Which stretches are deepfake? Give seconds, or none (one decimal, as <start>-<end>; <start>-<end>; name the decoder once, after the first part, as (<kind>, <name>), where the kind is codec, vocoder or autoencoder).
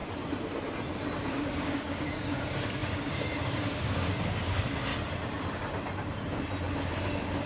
1.3-4.9 (codec, DAC)